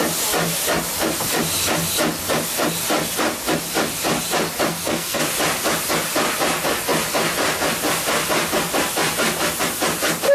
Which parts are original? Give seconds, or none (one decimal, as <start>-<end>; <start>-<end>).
0.0-4.7; 5.2-10.3

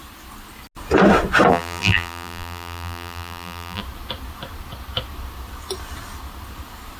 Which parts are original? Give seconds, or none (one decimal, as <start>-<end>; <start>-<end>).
0.0-1.5; 3.8-7.0

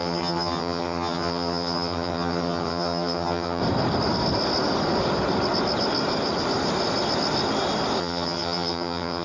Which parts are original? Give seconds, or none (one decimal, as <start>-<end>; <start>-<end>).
3.6-8.0

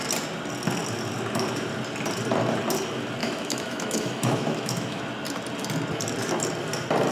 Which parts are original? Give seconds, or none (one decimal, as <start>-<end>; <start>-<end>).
0.0-3.2; 5.0-7.1

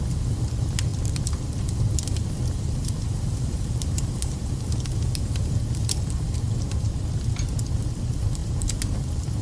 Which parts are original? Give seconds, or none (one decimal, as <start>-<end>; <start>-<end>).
0.0-2.8; 7.0-8.4; 9.0-9.4

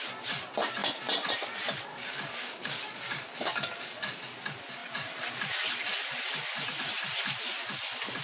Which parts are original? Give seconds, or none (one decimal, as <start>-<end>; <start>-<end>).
0.0-1.9; 4.1-8.2

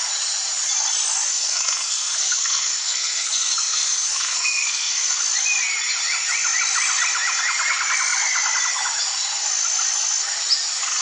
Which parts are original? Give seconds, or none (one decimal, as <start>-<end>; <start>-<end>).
0.0-1.3; 5.2-11.0

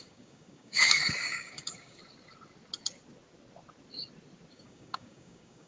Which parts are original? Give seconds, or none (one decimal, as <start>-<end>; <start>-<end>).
2.0-4.5